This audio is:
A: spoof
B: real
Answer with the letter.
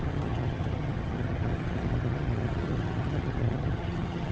A